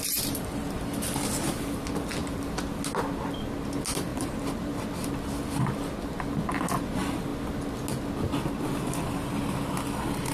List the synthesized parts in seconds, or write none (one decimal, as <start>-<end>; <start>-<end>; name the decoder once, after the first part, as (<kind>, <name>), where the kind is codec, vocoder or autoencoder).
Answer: 4.1-4.9 (vocoder, BigVGAN v2)

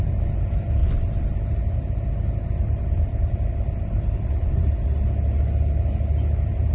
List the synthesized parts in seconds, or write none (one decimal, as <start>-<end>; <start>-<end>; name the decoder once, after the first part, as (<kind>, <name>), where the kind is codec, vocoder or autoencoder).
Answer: none